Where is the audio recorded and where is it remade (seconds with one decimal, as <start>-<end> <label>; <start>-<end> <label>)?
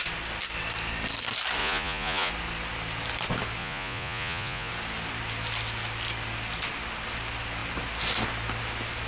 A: 0.0-1.6 recorded; 1.6-2.3 remade; 2.3-3.6 recorded; 3.6-4.7 remade; 4.7-9.1 recorded